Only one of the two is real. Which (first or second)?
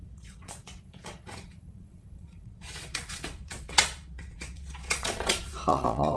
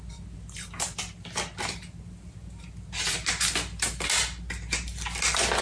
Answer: second